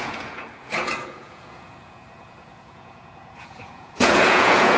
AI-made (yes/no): yes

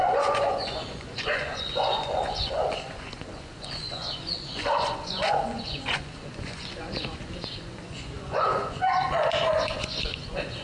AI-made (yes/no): yes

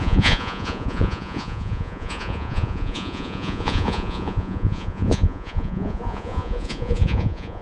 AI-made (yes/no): yes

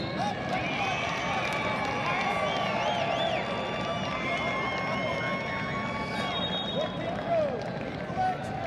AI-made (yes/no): no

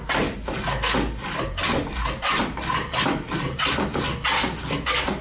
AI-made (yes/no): no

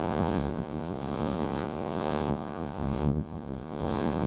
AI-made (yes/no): yes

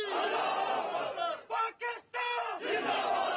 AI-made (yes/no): no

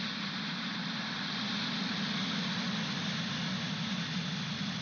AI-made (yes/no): no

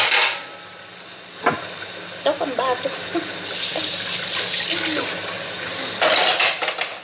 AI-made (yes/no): no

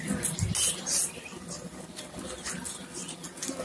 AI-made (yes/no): no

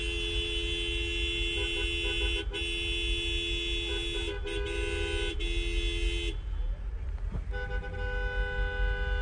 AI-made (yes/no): no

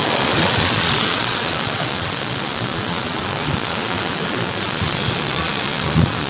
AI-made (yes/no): yes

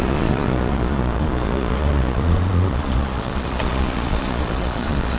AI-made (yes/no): yes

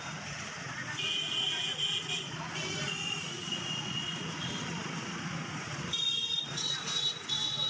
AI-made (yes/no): yes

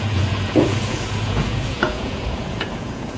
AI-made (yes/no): yes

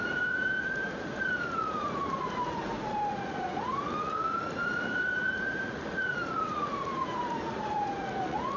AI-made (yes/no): yes